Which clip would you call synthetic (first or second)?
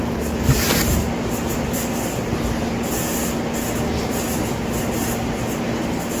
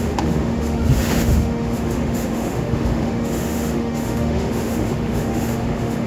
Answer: second